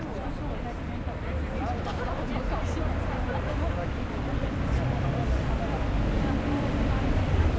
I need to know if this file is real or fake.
real